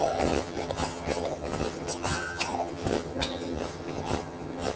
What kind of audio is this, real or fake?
fake